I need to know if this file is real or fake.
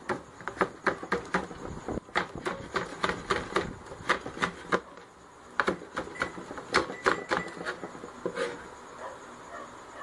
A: real